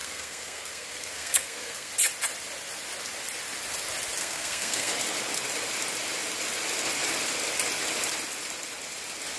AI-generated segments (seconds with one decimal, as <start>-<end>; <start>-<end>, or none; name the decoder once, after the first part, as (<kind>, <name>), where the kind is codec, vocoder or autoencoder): 0.0-1.9 (codec, SNAC); 4.2-4.9